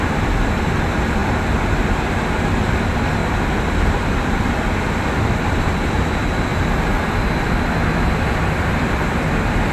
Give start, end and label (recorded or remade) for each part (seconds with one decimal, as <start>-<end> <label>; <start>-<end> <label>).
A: 0.0-1.2 remade; 1.2-2.1 recorded; 2.1-3.2 remade; 3.2-3.8 recorded; 3.8-9.7 remade